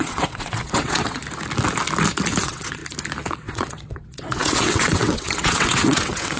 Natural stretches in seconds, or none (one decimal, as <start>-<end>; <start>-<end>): 1.2-2.4; 2.8-3.3